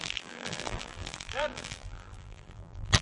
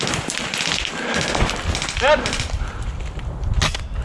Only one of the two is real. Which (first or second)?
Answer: second